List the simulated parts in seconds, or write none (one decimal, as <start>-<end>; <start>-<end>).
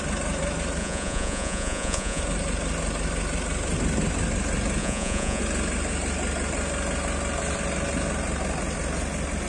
0.8-2.2; 4.8-5.4